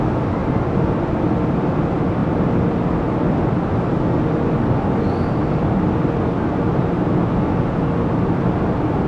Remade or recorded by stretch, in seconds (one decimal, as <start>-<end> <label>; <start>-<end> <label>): 0.0-9.1 recorded